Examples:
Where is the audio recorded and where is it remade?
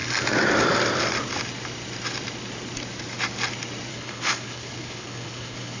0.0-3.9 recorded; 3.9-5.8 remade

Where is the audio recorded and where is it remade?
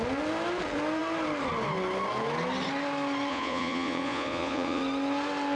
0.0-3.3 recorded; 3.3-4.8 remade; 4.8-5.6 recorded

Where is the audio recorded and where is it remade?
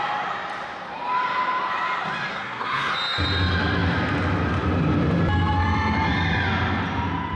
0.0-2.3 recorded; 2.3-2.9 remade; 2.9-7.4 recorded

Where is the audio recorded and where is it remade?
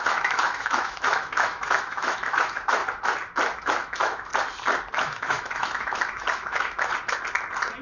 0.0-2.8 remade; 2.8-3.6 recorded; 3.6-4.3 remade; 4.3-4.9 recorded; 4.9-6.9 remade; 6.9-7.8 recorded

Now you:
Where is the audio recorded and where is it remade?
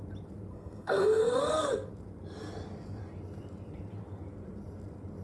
0.0-0.5 recorded; 0.5-1.9 remade; 1.9-5.2 recorded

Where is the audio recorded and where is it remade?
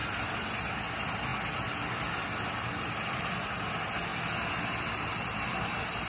0.0-4.1 remade; 4.1-4.8 recorded; 4.8-6.1 remade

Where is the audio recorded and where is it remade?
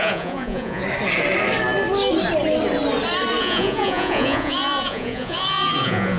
0.0-0.8 remade; 0.8-3.4 recorded; 3.4-6.2 remade